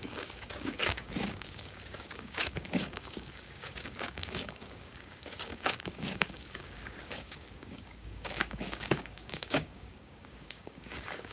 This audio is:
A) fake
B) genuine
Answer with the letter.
A